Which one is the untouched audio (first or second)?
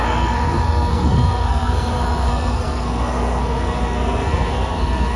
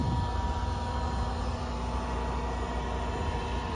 second